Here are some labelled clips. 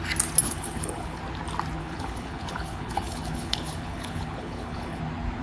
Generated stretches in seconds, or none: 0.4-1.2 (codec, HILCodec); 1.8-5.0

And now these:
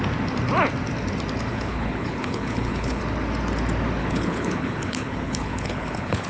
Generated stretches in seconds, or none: 1.5-3.0 (codec, HILCodec); 4.0-6.3

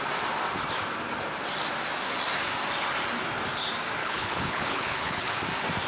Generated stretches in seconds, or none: 4.0-5.4 (codec, HILCodec)

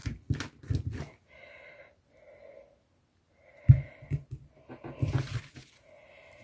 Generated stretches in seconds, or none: none